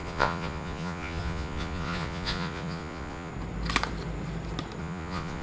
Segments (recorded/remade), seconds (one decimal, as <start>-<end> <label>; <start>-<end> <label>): 0.0-3.3 remade; 3.3-4.8 recorded; 4.8-5.4 remade